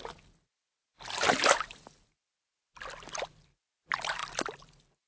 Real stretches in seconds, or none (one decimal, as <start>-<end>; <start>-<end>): 0.0-5.1